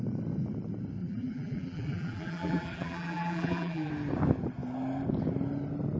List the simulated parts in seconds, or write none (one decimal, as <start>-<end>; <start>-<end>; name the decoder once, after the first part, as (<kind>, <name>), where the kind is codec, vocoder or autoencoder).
1.0-3.9 (vocoder, BigVGAN v2)